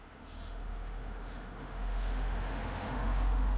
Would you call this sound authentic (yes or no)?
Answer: no